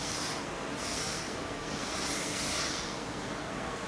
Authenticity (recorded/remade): remade